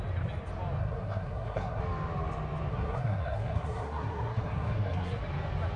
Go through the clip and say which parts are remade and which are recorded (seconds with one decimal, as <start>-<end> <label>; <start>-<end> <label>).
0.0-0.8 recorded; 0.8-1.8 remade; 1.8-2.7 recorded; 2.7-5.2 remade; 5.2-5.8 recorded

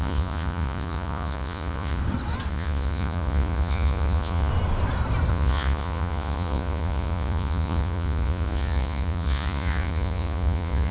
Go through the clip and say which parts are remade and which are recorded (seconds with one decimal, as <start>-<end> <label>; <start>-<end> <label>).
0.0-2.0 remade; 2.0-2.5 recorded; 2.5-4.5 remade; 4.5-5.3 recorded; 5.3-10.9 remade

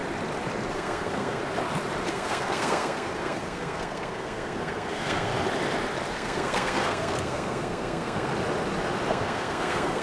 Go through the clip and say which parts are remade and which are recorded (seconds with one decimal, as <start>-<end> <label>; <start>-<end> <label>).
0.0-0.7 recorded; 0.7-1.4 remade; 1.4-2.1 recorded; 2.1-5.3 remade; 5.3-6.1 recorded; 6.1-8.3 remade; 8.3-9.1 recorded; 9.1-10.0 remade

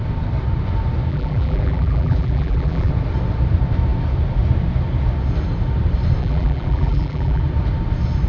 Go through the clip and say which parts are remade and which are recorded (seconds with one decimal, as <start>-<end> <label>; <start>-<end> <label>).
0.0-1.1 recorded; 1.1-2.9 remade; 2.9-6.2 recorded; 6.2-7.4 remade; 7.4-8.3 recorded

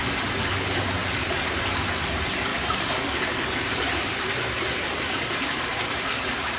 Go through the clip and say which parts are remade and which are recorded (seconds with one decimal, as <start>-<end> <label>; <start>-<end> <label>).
0.0-1.0 recorded; 1.0-1.5 remade; 1.5-2.5 recorded; 2.5-6.6 remade